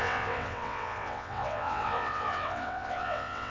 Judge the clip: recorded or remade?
remade